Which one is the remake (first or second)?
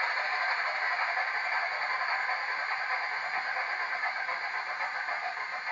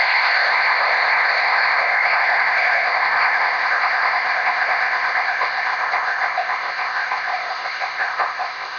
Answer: second